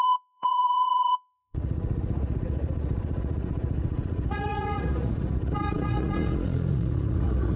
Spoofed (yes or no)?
yes